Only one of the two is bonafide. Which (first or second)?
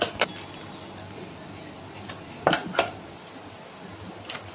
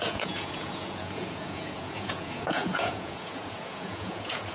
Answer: first